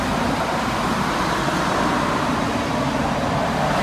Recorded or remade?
recorded